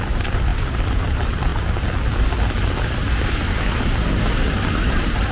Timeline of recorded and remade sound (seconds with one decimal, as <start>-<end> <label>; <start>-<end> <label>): 0.0-1.5 remade; 1.5-4.7 recorded; 4.7-5.3 remade

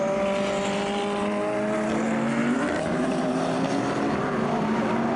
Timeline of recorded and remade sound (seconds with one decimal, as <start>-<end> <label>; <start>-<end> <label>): 0.0-2.4 recorded; 2.4-4.8 remade; 4.8-5.2 recorded

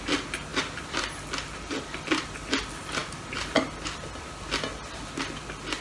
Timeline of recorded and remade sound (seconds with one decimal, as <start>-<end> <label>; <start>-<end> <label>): 0.0-0.5 recorded; 0.5-2.0 remade; 2.0-5.8 recorded

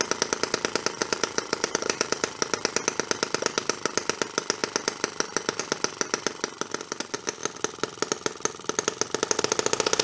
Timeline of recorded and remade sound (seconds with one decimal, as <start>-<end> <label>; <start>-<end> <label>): 0.0-1.0 recorded; 1.0-2.4 remade; 2.4-10.0 recorded

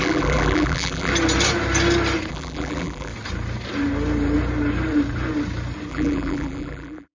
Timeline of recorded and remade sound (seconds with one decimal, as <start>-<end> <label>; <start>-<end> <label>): 0.0-1.1 remade; 1.1-2.3 recorded; 2.3-3.1 remade; 3.1-5.9 recorded; 5.9-7.1 remade